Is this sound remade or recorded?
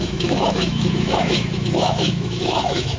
remade